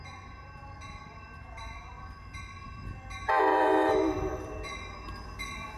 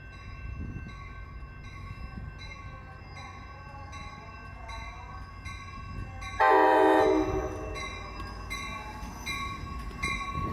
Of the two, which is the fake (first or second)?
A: first